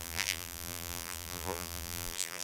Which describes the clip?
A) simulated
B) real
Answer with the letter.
A